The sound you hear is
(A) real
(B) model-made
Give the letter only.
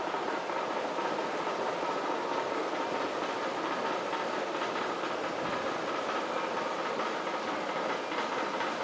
A